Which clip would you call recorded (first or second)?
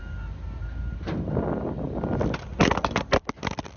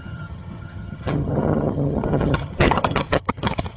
first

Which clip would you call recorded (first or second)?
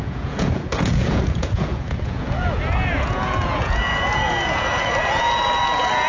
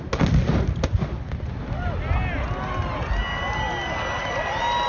second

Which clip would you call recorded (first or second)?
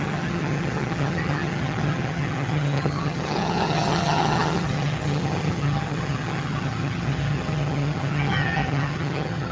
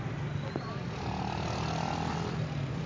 second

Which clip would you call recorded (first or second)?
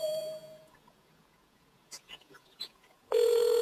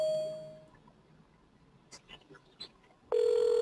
second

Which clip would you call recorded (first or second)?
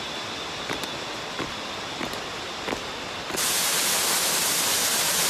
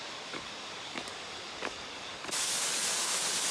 first